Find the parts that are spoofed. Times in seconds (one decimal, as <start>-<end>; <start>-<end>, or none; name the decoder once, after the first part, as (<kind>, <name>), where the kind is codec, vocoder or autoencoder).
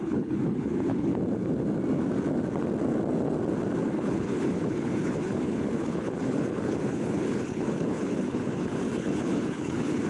0.0-1.1 (codec, HILCodec); 3.8-10.1